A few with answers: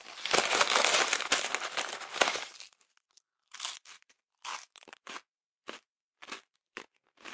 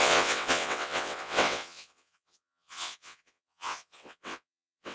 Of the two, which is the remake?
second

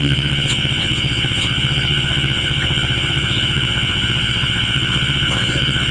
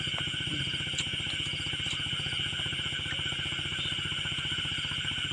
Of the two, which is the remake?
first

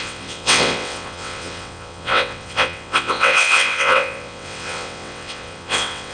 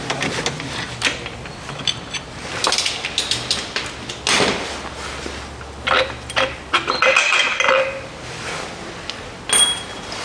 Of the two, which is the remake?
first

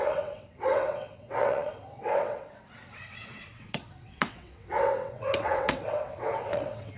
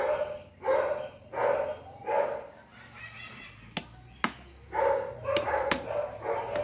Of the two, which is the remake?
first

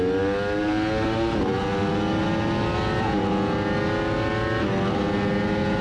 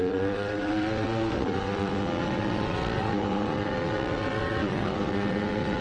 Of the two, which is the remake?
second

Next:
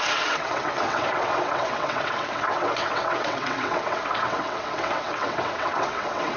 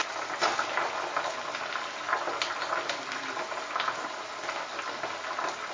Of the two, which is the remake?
first